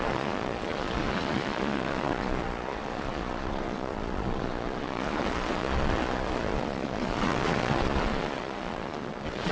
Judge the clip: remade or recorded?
remade